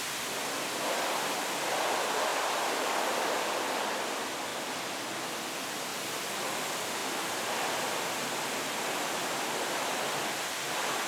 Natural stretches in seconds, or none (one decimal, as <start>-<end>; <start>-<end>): 0.0-2.3; 4.0-4.5; 5.1-5.9; 6.5-11.1